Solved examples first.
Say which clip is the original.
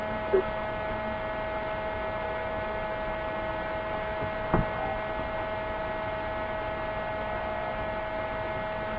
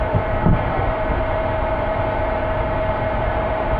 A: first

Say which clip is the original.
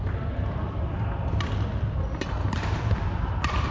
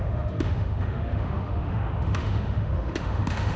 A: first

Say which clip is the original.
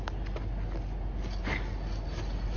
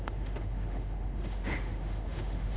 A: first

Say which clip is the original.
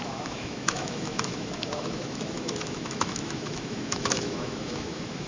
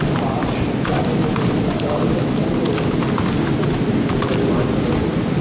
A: second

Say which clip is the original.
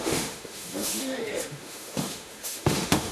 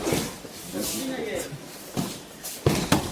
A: second